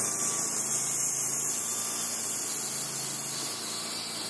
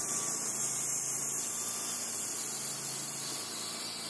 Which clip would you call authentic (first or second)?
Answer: first